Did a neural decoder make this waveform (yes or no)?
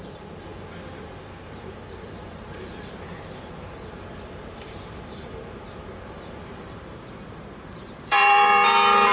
yes